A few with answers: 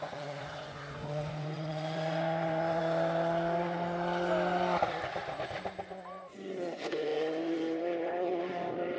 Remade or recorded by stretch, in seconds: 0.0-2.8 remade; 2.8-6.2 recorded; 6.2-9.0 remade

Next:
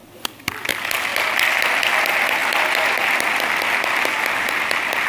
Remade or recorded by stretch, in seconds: 0.0-0.7 remade; 0.7-5.1 recorded

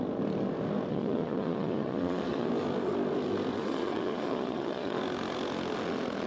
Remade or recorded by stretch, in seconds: 0.0-0.9 recorded; 0.9-2.5 remade; 2.5-3.5 recorded; 3.5-5.0 remade; 5.0-6.3 recorded

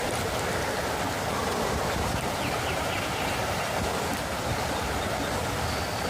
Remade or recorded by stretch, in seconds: 0.0-1.4 recorded; 1.4-3.7 remade; 3.7-6.1 recorded

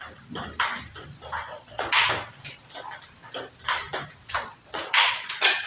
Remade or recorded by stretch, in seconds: 0.0-1.5 recorded; 1.5-2.1 remade; 2.1-4.2 recorded; 4.2-5.7 remade

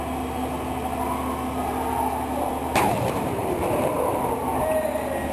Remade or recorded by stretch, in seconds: 0.0-2.6 recorded; 2.6-4.3 remade; 4.3-5.3 recorded